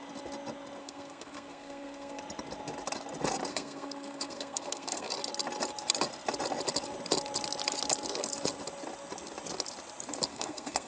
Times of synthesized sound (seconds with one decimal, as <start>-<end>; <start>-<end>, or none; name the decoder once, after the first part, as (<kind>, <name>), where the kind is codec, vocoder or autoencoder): 0.8-2.2 (codec, SNAC); 3.5-5.1; 10.3-10.9